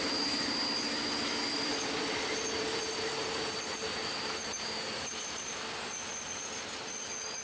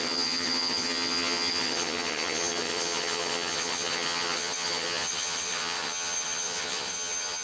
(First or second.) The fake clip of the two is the second